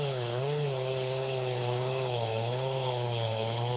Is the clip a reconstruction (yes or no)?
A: yes